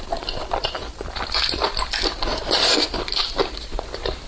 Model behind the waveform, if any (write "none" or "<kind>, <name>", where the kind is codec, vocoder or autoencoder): none